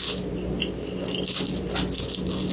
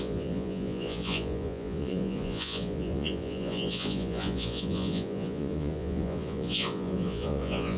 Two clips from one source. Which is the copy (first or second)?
second